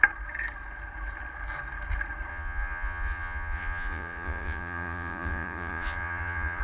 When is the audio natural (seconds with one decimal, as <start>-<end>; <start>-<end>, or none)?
0.0-2.3